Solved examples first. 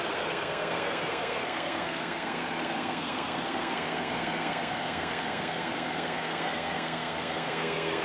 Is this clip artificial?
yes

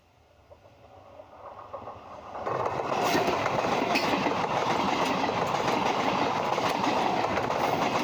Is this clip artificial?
no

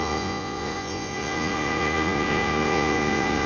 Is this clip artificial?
yes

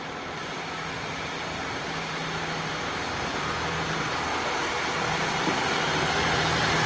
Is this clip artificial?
no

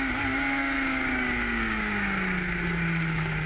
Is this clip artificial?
yes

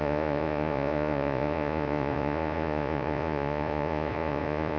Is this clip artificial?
yes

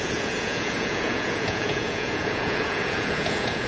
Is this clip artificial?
yes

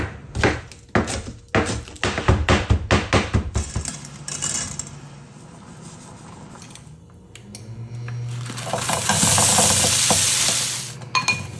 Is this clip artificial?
no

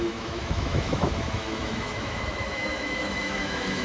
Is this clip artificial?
yes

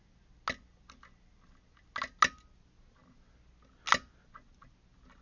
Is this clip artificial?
no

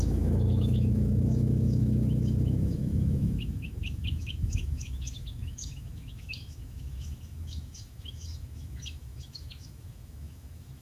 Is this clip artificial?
yes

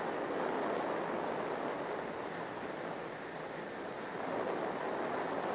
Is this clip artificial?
no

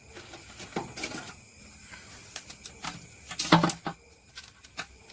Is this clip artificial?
no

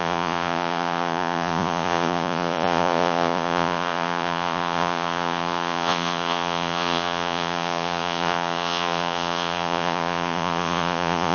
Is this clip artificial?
yes